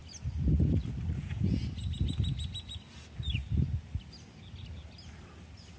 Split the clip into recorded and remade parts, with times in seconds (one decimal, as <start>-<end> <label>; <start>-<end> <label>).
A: 0.0-5.8 recorded

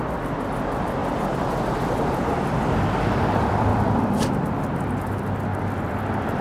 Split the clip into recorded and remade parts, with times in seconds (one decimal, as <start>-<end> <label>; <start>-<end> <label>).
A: 0.0-1.0 recorded; 1.0-2.5 remade; 2.5-3.7 recorded; 3.7-4.4 remade; 4.4-6.4 recorded

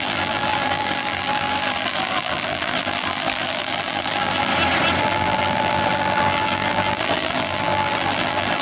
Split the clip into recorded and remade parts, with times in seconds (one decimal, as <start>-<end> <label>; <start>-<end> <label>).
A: 0.0-4.5 remade; 4.5-5.0 recorded; 5.0-8.6 remade

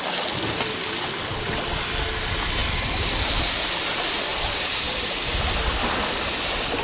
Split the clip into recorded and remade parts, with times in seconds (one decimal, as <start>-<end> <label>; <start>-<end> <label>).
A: 0.0-4.3 recorded; 4.3-5.5 remade; 5.5-6.8 recorded

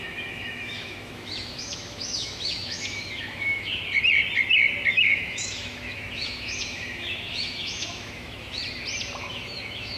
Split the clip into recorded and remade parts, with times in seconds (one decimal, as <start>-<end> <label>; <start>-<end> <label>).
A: 0.0-3.8 remade; 3.8-4.9 recorded; 4.9-8.6 remade; 8.6-9.3 recorded; 9.3-10.0 remade